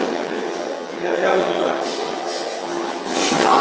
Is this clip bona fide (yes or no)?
no